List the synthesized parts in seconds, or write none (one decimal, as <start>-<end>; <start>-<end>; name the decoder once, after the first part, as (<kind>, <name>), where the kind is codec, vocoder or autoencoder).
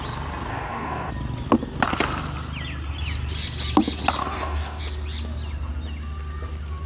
0.5-1.1 (codec, DAC); 4.2-4.8